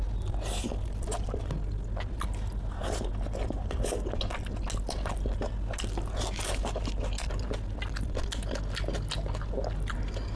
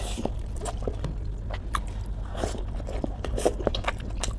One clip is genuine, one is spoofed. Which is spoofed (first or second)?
second